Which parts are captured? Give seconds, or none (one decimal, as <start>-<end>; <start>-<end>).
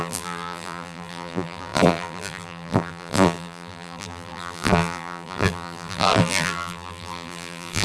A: none